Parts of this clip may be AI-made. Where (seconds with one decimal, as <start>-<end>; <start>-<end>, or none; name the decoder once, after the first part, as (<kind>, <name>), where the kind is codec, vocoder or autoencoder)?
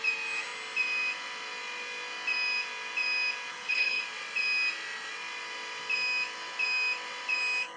3.5-4.0 (codec, HILCodec)